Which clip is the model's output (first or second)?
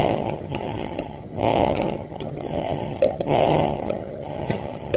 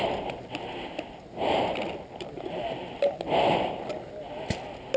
first